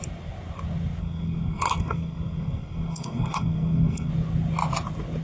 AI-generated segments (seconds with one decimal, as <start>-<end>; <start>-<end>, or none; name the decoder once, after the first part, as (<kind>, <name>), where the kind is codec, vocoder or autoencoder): 1.0-4.1 (codec, SNAC)